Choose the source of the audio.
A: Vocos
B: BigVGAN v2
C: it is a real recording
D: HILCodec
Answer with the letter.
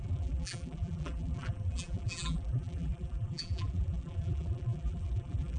B